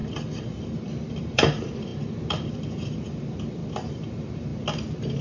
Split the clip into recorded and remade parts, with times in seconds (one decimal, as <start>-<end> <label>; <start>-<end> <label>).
0.0-3.6 remade; 3.6-4.1 recorded; 4.1-4.5 remade; 4.5-5.2 recorded